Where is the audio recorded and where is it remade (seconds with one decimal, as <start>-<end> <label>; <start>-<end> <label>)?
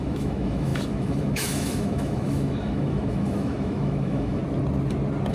0.0-4.4 remade; 4.4-5.3 recorded